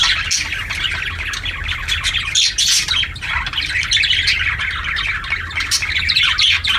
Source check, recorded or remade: recorded